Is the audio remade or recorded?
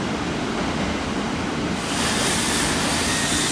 recorded